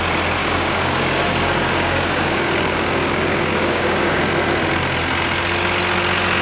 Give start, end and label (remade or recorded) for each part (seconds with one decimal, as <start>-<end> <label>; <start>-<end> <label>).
0.0-0.4 recorded; 0.4-4.2 remade; 4.2-6.4 recorded